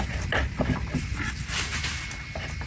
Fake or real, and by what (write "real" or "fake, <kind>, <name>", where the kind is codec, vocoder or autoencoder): real